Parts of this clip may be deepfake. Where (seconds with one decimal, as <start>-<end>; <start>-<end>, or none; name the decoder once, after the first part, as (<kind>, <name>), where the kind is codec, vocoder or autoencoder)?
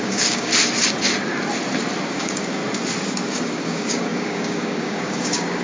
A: 0.0-0.5 (codec, DAC); 2.1-2.6; 3.3-5.6